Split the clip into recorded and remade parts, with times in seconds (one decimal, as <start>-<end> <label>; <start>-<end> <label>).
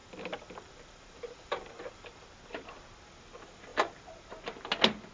0.0-2.9 remade; 2.9-3.7 recorded; 3.7-4.3 remade; 4.3-5.1 recorded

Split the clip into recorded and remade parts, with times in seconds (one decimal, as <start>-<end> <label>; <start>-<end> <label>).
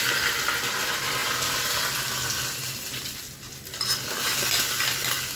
0.0-5.4 recorded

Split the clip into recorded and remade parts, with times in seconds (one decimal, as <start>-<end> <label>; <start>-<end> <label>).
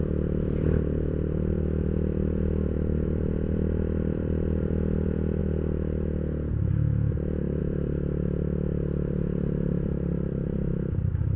0.0-5.4 remade; 5.4-7.6 recorded; 7.6-11.4 remade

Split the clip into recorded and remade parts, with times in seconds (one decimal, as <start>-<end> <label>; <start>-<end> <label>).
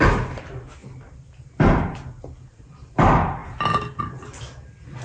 0.0-5.0 recorded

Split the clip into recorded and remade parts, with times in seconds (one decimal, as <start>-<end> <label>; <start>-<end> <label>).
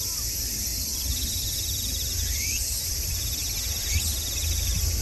0.0-0.7 recorded; 0.7-3.7 remade; 3.7-5.0 recorded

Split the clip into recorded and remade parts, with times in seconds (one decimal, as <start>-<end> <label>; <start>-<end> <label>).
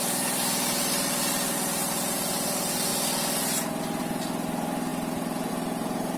0.0-2.9 remade; 2.9-4.0 recorded; 4.0-6.2 remade